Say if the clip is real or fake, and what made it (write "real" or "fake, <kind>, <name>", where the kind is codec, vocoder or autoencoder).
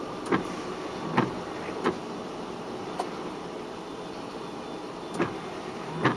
real